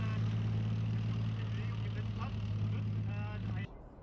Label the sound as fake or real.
real